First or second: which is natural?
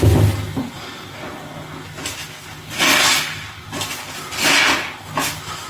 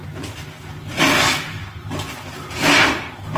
first